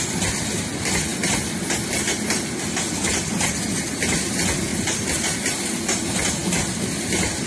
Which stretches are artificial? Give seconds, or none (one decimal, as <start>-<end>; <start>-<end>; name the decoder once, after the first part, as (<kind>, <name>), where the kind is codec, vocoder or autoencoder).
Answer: 4.7-5.8 (vocoder, BigVGAN v2)